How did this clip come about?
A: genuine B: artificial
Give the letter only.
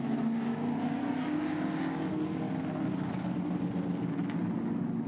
A